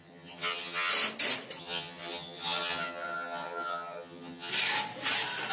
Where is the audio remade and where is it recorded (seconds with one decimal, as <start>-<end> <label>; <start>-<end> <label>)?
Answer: 0.0-0.9 remade; 0.9-1.6 recorded; 1.6-4.5 remade; 4.5-5.5 recorded